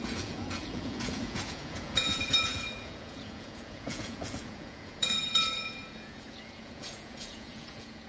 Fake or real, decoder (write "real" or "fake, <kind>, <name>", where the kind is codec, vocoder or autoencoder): fake, vocoder, Vocos